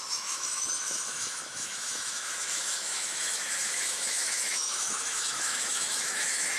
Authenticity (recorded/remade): remade